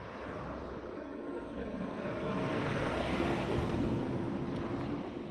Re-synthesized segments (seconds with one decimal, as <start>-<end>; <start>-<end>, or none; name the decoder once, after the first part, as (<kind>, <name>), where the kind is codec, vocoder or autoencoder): 0.9-4.1 (codec, SNAC)

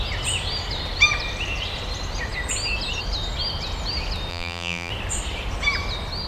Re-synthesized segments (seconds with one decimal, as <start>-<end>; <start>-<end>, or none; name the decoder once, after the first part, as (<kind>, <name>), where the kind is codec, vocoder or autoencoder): 4.3-4.9 (vocoder, BigVGAN v2)

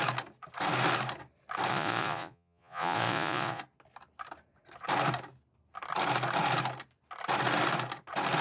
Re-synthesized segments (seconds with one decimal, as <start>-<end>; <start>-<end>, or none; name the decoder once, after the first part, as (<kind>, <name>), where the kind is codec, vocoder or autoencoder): 1.7-3.6 (vocoder, Vocos)

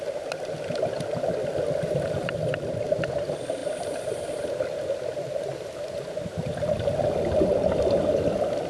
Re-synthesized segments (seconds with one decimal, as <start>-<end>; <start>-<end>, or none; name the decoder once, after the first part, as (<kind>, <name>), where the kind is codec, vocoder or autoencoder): 3.6-4.7 (vocoder, BigVGAN v2)